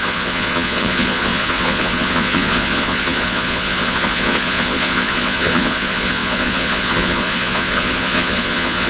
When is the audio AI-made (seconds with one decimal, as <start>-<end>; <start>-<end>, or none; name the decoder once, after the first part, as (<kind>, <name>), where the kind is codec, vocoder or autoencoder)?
0.0-8.9 (vocoder, Vocos)